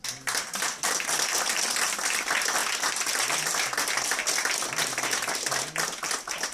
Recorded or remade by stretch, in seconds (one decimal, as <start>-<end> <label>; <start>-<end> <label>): 0.0-6.5 recorded